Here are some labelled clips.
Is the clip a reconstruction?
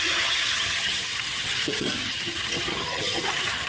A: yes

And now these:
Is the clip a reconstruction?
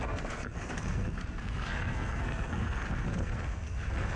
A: yes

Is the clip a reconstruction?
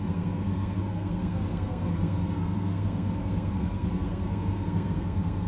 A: yes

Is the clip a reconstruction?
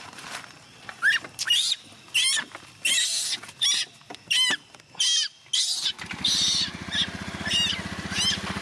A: no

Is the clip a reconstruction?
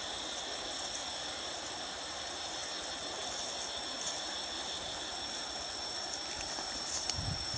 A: no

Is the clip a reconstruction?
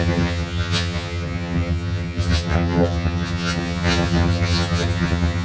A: yes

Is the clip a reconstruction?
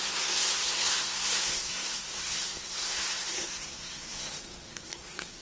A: yes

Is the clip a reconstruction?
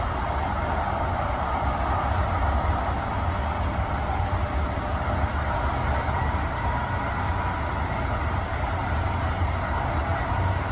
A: no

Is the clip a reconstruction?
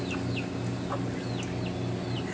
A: no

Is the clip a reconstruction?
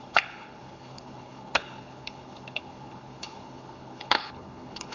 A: yes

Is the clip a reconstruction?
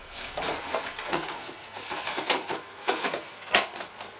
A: yes